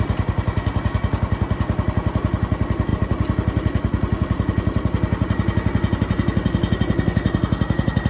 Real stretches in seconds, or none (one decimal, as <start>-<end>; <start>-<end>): 0.0-8.1